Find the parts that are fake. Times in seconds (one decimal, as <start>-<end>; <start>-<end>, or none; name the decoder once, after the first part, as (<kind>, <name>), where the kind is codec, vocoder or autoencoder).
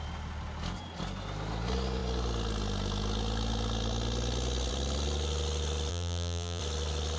5.9-6.6 (vocoder, BigVGAN v2)